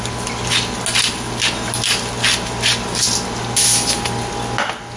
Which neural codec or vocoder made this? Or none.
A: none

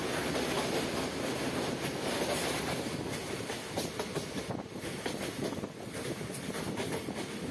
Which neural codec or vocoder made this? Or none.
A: none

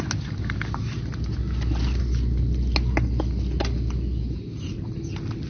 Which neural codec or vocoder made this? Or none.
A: none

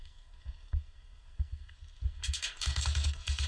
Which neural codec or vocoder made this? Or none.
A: codec, SNAC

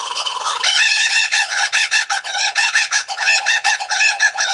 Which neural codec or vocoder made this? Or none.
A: codec, HILCodec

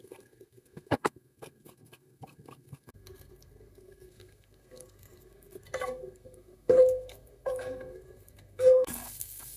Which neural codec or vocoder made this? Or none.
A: codec, SNAC